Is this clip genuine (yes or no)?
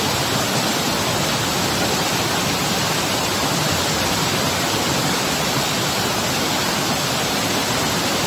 yes